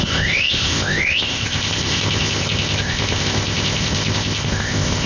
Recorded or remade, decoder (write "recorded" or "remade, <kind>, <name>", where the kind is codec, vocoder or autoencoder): remade, codec, ZipCodec